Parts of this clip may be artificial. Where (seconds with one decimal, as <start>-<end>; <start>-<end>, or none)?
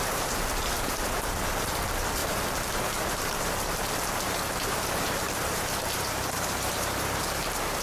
0.0-7.8